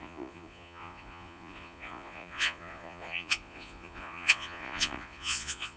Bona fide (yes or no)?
no